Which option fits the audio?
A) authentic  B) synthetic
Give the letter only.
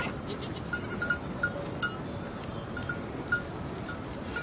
A